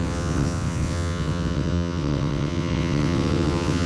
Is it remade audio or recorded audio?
remade